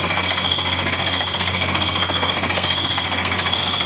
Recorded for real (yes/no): no